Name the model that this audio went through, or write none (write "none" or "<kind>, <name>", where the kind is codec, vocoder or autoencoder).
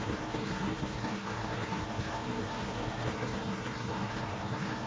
codec, SNAC